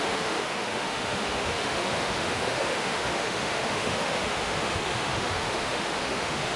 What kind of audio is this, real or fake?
fake